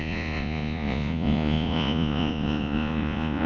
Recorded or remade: remade